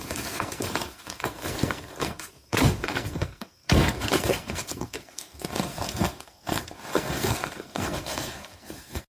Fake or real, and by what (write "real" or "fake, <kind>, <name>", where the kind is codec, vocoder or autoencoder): fake, codec, SNAC